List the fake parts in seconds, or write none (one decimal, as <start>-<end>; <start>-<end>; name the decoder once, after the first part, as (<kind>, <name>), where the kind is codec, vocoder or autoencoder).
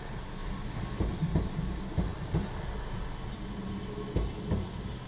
0.4-1.0 (vocoder, BigVGAN v2)